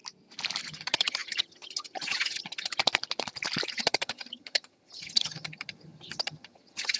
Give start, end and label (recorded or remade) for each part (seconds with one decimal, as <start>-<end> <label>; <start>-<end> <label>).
0.0-0.6 recorded; 0.6-2.8 remade; 2.8-3.7 recorded; 3.7-7.0 remade